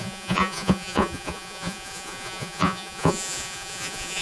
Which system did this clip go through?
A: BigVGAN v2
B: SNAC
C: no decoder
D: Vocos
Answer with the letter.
D